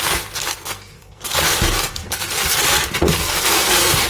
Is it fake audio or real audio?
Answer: fake